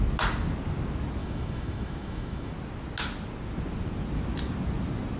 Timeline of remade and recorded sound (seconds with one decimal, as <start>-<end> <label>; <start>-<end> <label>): 0.0-1.2 recorded; 1.2-2.5 remade; 2.5-5.2 recorded

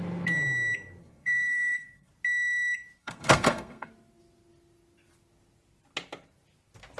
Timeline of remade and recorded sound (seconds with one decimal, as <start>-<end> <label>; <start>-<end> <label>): 0.0-1.0 recorded; 1.0-2.1 remade; 2.1-3.0 recorded; 3.0-3.9 remade; 3.9-7.0 recorded

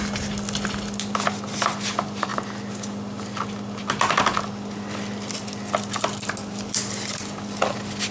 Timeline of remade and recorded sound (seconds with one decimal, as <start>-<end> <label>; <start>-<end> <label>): 0.0-8.1 recorded

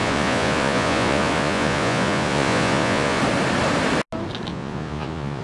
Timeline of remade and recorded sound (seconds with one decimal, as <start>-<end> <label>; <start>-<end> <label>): 0.0-3.2 remade; 3.2-4.5 recorded; 4.5-5.4 remade

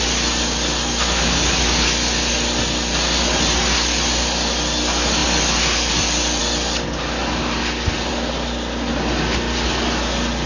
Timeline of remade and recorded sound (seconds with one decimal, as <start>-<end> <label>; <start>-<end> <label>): 0.0-10.5 recorded

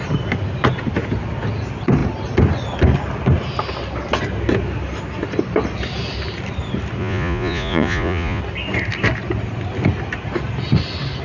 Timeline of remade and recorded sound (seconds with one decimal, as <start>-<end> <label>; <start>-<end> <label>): 0.0-7.0 recorded; 7.0-8.4 remade; 8.4-11.2 recorded

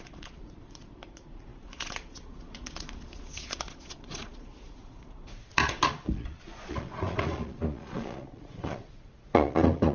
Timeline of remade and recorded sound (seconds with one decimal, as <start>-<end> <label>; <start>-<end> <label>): 0.0-9.9 remade